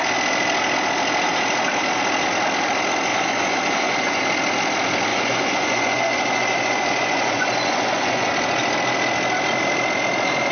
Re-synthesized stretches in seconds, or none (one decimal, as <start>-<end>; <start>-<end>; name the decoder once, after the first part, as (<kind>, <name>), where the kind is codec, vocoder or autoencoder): 3.1-4.2 (vocoder, Vocos); 5.1-8.3